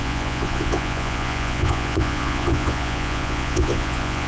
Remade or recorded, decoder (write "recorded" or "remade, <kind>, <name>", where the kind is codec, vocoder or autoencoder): remade, vocoder, Vocos